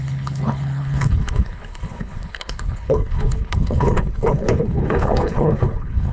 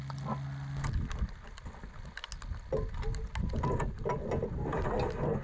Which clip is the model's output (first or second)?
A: first